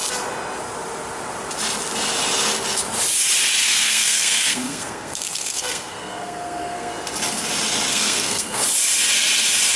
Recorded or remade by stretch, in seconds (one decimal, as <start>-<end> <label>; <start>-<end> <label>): 0.0-3.6 recorded; 3.6-6.9 remade; 6.9-7.9 recorded; 7.9-8.6 remade; 8.6-9.8 recorded